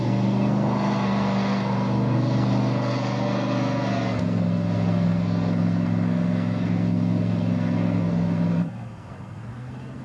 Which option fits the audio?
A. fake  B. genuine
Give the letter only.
A